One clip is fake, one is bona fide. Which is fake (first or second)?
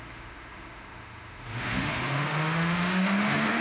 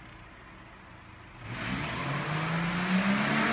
first